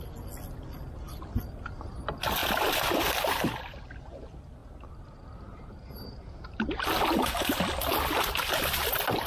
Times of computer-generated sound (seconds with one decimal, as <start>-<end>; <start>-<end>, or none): 4.6-6.8

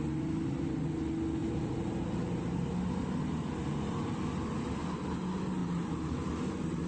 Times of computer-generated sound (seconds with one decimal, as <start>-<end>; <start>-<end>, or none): 1.4-2.9; 5.6-6.3